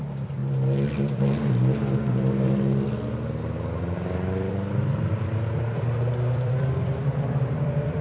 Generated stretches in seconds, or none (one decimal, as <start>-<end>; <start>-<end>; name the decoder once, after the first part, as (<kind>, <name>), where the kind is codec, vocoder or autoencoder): 0.0-0.4 (vocoder, BigVGAN v2); 4.5-8.0